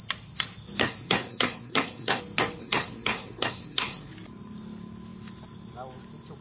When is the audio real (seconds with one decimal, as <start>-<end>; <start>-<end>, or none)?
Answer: 0.0-0.8; 2.2-2.6; 4.1-6.4